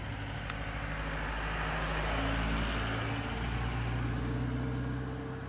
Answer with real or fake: real